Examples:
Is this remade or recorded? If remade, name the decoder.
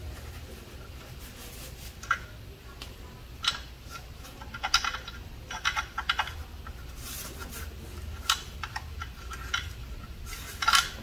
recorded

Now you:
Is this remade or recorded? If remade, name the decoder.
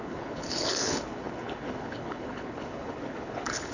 remade, codec, HILCodec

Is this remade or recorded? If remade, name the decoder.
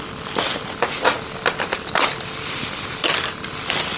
recorded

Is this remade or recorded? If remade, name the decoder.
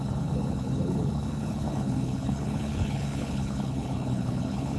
remade, codec, HILCodec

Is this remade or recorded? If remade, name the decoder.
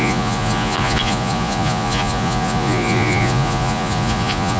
remade, vocoder, Vocos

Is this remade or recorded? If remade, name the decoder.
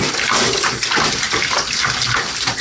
recorded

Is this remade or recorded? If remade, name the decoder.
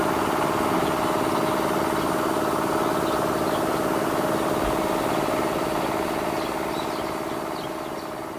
recorded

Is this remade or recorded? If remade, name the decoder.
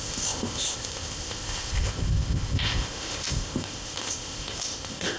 remade, codec, ZipCodec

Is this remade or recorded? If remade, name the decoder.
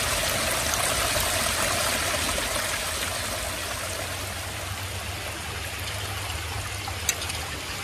recorded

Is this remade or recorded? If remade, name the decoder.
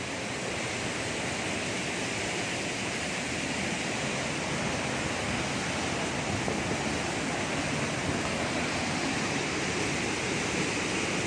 recorded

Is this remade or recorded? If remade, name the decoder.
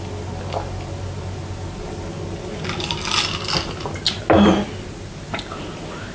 recorded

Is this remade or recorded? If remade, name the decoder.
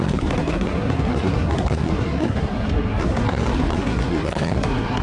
remade, codec, SNAC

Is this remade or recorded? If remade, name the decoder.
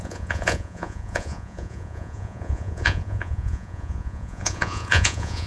remade, vocoder, Vocos